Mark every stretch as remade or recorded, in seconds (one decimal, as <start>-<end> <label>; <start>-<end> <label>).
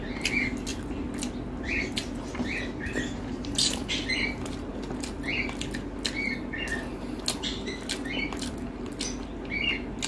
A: 0.0-10.1 recorded